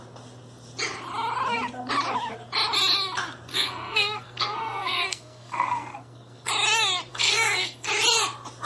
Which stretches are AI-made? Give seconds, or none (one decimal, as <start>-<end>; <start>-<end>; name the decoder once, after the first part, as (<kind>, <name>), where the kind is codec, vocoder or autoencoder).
3.5-6.5 (codec, SNAC); 7.1-7.9

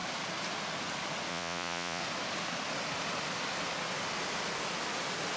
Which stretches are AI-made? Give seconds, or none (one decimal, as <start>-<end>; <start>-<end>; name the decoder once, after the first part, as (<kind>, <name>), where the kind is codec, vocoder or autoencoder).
1.3-2.0 (vocoder, Vocos)

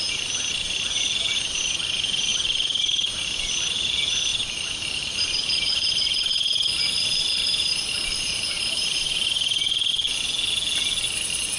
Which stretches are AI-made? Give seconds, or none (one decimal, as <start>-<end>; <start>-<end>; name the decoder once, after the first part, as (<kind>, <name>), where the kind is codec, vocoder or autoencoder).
0.0-9.9 (vocoder, BigVGAN v2)